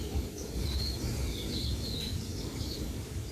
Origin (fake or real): fake